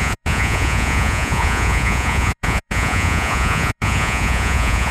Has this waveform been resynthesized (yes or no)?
yes